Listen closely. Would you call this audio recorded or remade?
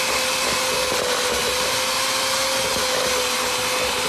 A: recorded